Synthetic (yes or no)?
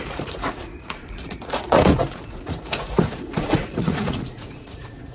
yes